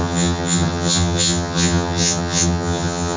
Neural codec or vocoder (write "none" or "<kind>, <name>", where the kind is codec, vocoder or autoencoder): vocoder, HiFi-GAN